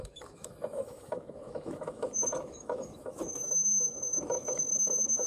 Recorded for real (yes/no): no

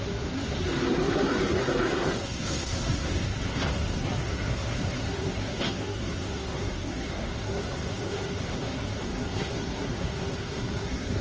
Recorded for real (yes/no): no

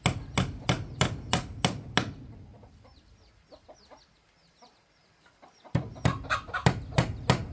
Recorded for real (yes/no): yes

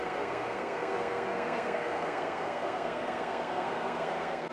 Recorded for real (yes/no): no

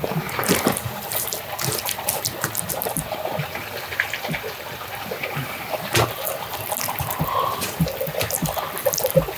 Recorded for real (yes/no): yes